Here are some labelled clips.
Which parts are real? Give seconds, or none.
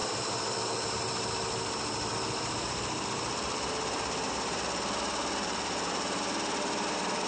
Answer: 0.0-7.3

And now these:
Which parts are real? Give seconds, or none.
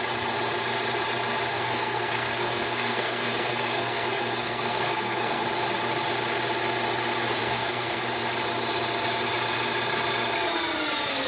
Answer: 0.0-1.5; 5.4-7.4; 8.0-11.3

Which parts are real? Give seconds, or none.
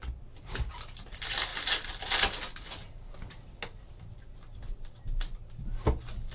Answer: 0.0-6.3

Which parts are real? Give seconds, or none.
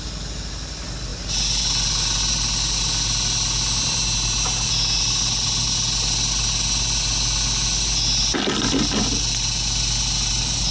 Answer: 0.0-10.7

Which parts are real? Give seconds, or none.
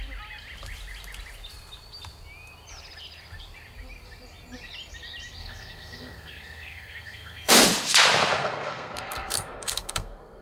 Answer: 0.0-5.4; 7.5-8.4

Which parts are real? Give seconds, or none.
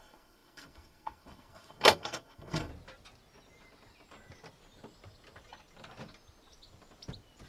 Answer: 2.7-7.5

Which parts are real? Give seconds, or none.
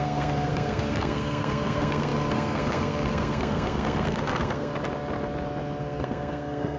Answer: 4.7-5.8